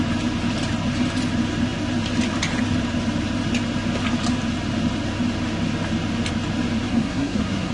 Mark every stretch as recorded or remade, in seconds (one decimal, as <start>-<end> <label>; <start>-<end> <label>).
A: 0.0-6.9 recorded; 6.9-7.7 remade